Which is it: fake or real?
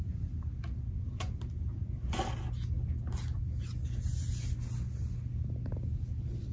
real